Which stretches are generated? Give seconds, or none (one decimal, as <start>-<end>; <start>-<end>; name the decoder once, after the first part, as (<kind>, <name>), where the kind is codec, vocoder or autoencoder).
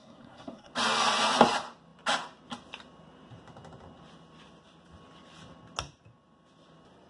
0.0-0.7 (codec, SNAC)